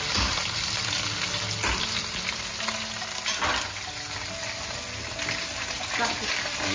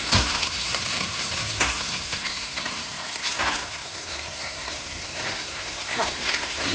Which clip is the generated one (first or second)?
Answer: second